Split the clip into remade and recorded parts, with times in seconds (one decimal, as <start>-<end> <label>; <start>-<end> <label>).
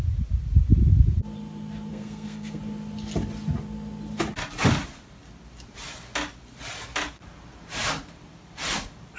0.0-1.9 recorded; 1.9-2.6 remade; 2.6-9.2 recorded